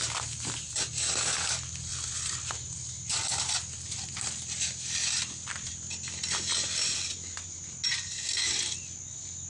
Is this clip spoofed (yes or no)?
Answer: no